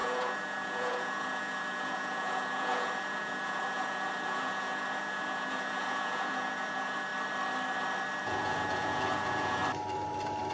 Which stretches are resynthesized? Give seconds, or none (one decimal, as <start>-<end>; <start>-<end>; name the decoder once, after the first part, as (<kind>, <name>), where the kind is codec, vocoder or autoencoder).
0.0-7.1 (vocoder, Vocos); 8.2-9.6

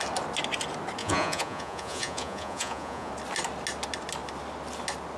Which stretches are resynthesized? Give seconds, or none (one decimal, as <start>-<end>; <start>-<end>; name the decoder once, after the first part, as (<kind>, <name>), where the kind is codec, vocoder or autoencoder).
1.0-3.1 (vocoder, Vocos)

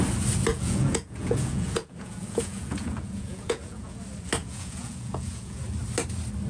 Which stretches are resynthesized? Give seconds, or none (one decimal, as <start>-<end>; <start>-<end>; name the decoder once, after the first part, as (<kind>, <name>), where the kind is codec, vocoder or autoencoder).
0.5-4.0 (vocoder, Vocos); 4.4-5.6

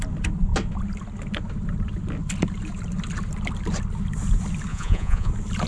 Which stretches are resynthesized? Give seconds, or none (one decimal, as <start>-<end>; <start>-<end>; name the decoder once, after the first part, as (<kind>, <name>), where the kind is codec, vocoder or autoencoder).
4.7-5.3 (vocoder, Vocos)

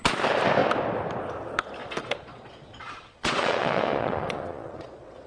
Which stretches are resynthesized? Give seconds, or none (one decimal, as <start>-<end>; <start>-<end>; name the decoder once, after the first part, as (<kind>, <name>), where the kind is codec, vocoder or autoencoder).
1.8-5.3 (vocoder, Vocos)

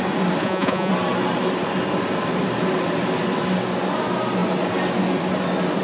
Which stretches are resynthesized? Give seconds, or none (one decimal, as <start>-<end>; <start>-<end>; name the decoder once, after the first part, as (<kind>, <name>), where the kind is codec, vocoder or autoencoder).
0.4-0.9 (vocoder, Vocos)